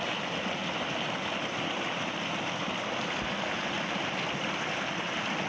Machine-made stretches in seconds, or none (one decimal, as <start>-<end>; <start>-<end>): none

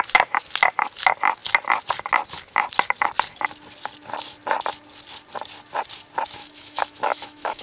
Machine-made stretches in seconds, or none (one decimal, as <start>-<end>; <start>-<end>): 6.4-7.6

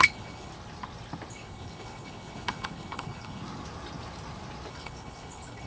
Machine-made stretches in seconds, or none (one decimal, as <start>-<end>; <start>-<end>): 0.0-0.5; 1.3-3.4; 4.7-5.7

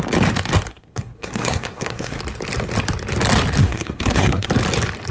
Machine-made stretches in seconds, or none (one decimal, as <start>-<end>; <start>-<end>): 0.7-2.2; 3.6-4.5

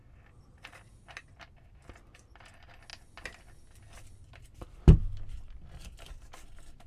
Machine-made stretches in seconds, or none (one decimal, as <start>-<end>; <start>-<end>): none